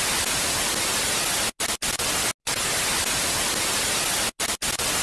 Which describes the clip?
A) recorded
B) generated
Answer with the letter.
A